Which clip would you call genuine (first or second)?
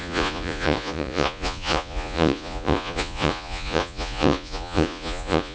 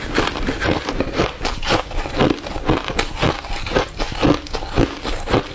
second